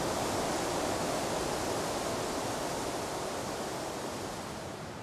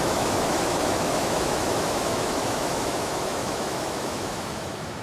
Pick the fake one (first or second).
second